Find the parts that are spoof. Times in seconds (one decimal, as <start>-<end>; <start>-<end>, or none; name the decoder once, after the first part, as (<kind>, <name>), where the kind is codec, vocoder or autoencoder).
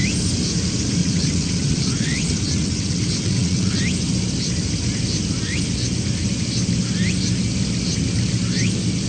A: 1.0-3.8 (vocoder, WaveNeXt)